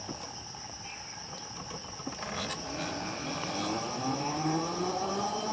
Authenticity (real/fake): real